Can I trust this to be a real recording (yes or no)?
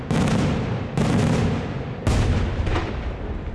yes